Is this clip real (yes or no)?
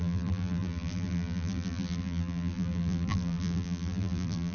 no